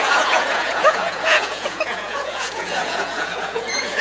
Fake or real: fake